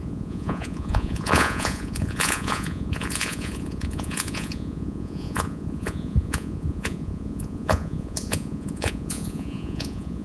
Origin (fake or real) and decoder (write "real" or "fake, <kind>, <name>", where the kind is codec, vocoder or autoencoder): fake, vocoder, Vocos